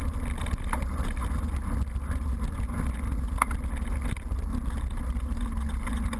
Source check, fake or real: real